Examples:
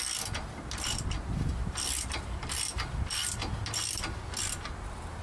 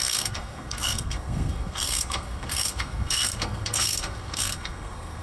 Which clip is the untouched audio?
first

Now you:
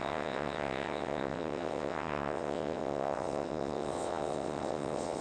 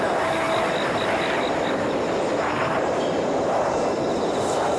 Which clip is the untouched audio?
second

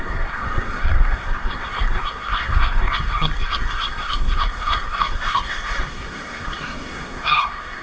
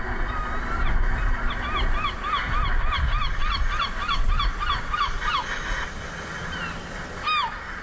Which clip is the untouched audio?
second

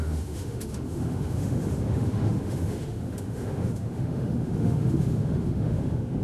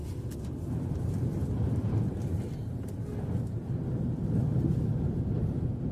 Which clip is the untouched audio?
second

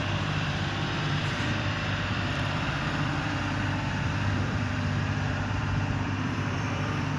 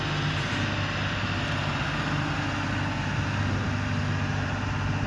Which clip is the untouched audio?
second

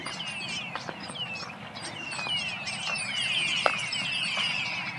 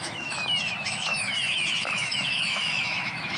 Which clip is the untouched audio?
first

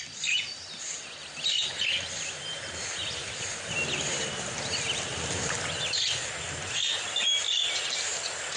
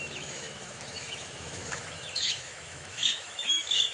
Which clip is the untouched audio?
first